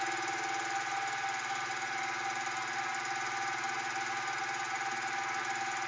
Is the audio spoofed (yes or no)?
no